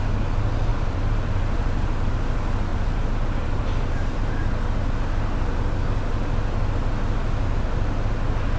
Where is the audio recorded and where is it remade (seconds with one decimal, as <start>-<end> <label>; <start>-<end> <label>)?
0.0-0.7 recorded; 0.7-2.2 remade; 2.2-2.7 recorded; 2.7-4.2 remade; 4.2-8.6 recorded